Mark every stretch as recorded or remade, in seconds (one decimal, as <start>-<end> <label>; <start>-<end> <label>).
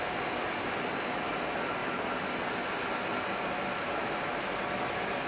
0.0-5.3 recorded